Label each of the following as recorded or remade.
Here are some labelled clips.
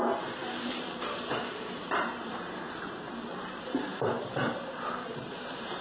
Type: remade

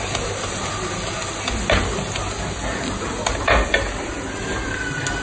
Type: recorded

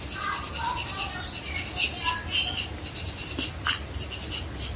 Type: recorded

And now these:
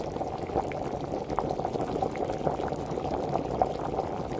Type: recorded